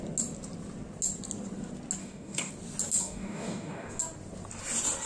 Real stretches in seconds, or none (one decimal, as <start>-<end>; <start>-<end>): 0.0-2.0; 2.5-3.0; 4.0-5.1